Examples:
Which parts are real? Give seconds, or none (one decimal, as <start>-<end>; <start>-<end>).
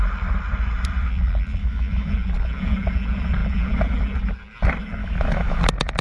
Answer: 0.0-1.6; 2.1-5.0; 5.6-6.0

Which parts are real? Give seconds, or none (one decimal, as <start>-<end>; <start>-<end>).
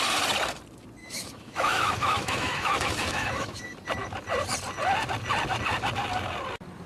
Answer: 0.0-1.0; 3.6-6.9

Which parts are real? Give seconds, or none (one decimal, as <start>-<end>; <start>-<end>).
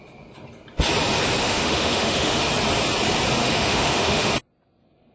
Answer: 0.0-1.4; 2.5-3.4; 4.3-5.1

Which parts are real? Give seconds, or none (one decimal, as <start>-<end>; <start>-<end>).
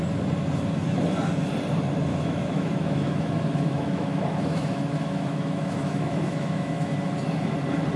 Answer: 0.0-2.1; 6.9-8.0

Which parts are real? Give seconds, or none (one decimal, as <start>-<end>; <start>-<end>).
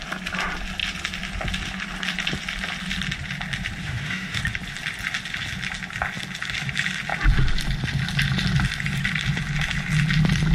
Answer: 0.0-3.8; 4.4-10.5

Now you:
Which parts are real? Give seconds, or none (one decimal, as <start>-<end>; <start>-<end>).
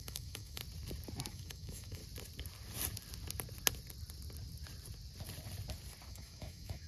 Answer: 0.6-1.3; 2.0-6.1